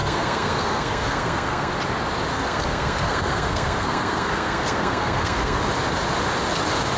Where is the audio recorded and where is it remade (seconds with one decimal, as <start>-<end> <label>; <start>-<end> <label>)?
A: 0.0-1.7 remade; 1.7-2.3 recorded; 2.3-5.6 remade; 5.6-7.0 recorded